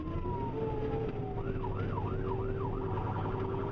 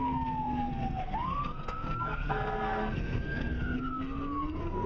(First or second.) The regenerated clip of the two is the second